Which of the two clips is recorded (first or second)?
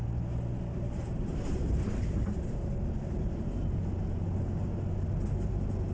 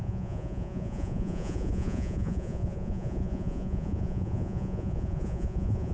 first